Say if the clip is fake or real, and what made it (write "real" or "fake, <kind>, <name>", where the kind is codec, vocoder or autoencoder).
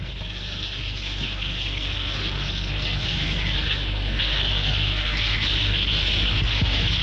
fake, codec, SNAC